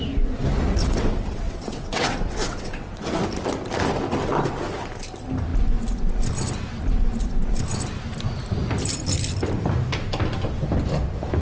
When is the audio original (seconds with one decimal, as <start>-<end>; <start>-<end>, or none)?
0.0-0.8; 3.2-11.4